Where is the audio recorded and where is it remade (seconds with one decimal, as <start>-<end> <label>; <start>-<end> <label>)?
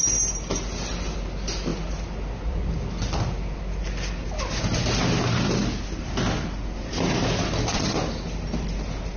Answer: 0.0-9.2 recorded